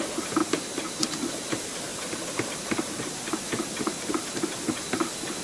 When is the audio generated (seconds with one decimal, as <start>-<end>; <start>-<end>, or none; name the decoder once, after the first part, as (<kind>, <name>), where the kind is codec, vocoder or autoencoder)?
none